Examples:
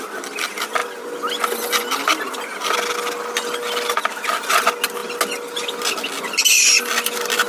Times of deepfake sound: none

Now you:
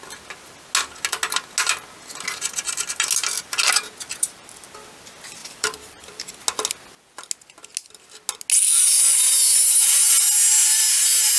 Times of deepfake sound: 5.4-6.4 (vocoder, BigVGAN v2)

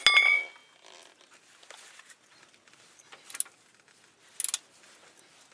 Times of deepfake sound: none

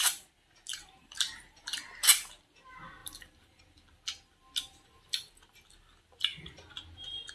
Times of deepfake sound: 0.7-1.8 (vocoder, BigVGAN v2); 3.0-3.6; 4.7-5.3

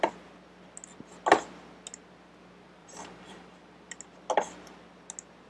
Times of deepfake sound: 2.8-3.6 (vocoder, BigVGAN v2)